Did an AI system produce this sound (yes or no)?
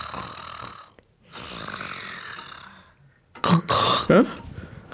no